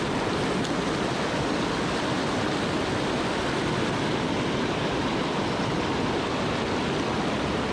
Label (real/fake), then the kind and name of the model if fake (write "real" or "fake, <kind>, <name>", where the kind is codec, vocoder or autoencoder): real